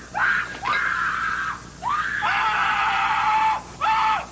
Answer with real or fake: real